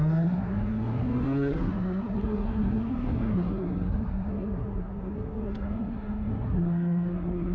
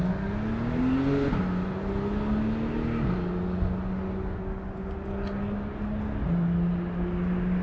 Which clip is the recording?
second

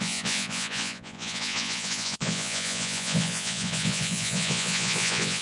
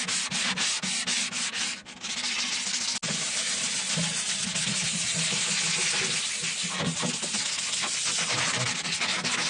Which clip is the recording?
second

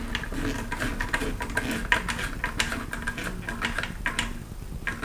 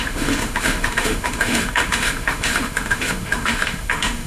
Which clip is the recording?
first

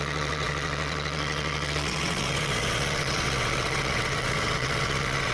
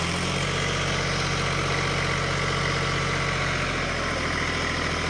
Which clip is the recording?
second